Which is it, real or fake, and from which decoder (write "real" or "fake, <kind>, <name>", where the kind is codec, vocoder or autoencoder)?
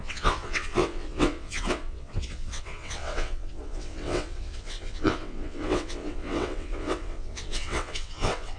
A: fake, vocoder, WaveNeXt